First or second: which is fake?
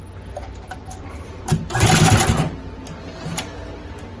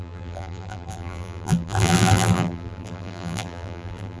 second